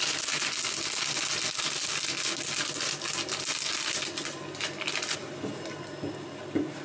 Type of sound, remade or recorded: recorded